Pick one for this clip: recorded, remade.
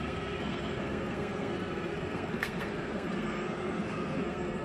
remade